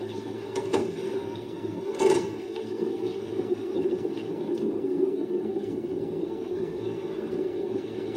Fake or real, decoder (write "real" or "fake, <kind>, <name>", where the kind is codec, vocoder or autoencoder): fake, codec, SNAC